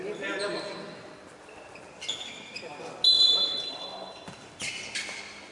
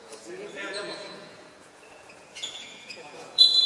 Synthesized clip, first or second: second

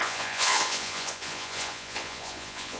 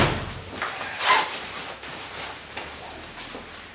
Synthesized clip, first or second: first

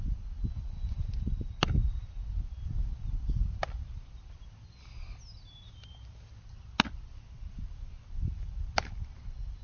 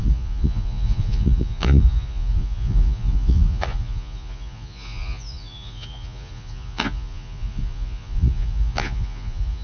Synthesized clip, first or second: second